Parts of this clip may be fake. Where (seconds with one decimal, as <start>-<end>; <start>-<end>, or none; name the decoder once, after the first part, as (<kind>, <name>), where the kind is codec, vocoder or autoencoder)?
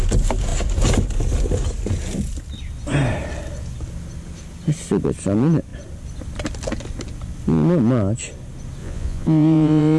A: 8.8-10.0 (vocoder, Vocos)